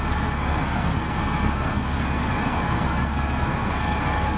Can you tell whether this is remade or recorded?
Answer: remade